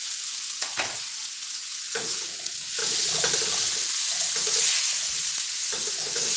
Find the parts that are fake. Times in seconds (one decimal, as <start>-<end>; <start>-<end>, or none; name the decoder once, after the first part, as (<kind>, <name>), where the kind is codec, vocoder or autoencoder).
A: 0.0-2.8 (vocoder, Vocos); 4.0-6.4